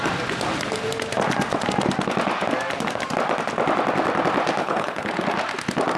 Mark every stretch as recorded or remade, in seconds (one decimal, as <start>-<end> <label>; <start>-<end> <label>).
0.0-4.6 recorded; 4.6-5.1 remade; 5.1-6.0 recorded